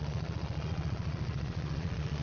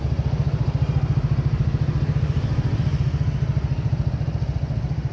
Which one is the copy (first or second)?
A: first